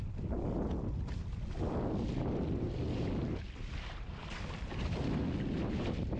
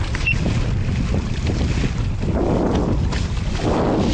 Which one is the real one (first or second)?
first